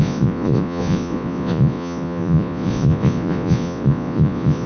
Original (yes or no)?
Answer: no